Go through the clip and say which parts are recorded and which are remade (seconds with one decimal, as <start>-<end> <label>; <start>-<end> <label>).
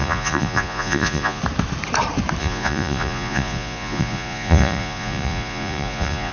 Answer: 0.0-1.4 remade; 1.4-2.4 recorded; 2.4-6.3 remade